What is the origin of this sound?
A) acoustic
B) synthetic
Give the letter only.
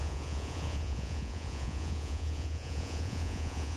B